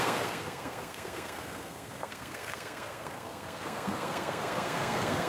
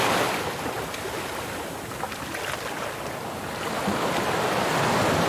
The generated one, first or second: first